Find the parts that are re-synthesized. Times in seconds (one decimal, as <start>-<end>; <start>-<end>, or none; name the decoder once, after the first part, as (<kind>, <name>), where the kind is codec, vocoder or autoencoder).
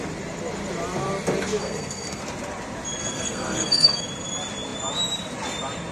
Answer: 1.6-2.2 (codec, SNAC); 3.0-4.0